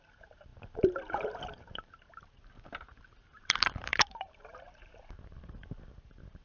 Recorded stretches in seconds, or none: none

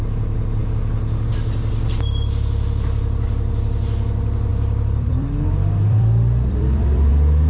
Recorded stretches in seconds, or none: 0.0-4.5; 7.1-7.5